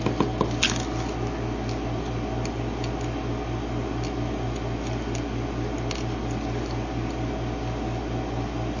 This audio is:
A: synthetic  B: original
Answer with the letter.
B